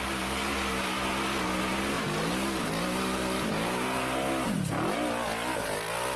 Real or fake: real